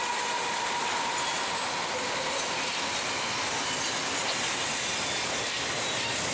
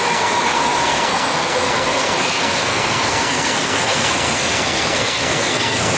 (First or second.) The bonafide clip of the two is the first